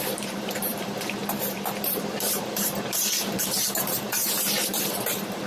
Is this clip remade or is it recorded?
remade